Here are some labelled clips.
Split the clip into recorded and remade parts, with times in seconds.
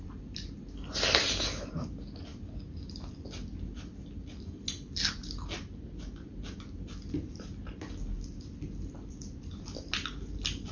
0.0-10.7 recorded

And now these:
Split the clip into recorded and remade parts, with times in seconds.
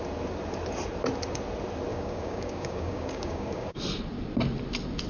0.0-1.9 recorded; 1.9-3.8 remade; 3.8-5.1 recorded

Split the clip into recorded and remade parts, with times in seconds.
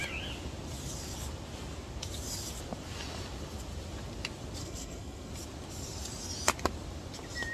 0.0-4.6 recorded; 4.6-5.3 remade; 5.3-7.5 recorded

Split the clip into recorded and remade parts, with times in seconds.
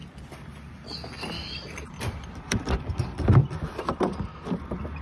0.0-5.0 recorded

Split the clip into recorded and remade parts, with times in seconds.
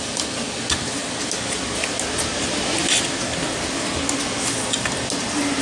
0.0-5.6 recorded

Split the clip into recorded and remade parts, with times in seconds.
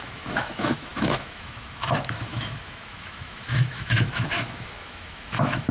0.0-5.7 remade